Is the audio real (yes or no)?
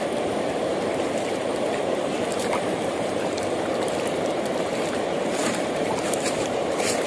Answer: no